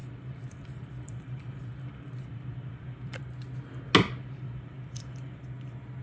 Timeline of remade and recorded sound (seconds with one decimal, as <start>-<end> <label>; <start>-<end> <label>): 0.0-3.2 remade; 3.2-4.2 recorded; 4.2-5.4 remade; 5.4-6.0 recorded

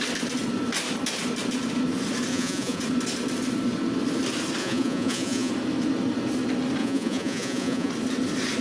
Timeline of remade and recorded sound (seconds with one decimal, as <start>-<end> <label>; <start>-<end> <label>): 0.0-2.3 recorded; 2.3-2.8 remade; 2.8-4.6 recorded; 4.6-5.5 remade; 5.5-6.8 recorded; 6.8-7.9 remade; 7.9-8.6 recorded

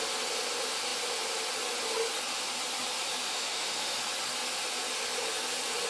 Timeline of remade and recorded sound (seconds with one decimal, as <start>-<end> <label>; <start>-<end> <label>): 0.0-3.3 recorded; 3.3-4.0 remade; 4.0-5.9 recorded

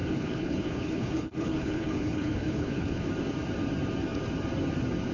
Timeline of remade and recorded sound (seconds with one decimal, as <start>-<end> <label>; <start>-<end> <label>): 0.0-3.1 remade; 3.1-5.1 recorded

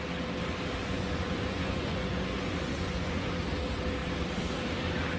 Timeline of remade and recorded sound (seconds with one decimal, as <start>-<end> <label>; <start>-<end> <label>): 0.0-0.8 recorded; 0.8-3.3 remade; 3.3-5.2 recorded

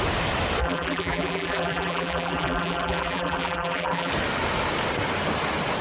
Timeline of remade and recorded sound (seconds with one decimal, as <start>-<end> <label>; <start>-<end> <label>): 0.0-0.6 recorded; 0.6-4.1 remade; 4.1-5.8 recorded

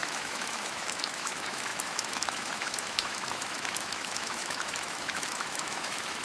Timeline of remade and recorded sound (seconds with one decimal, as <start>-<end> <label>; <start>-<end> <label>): 0.0-6.2 remade